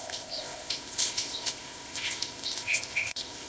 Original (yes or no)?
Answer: no